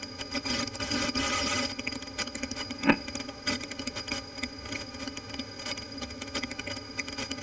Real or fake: fake